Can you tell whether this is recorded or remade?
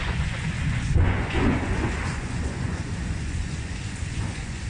remade